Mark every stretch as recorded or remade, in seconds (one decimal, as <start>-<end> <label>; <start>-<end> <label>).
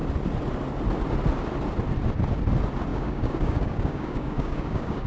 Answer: 0.0-2.9 recorded; 2.9-5.1 remade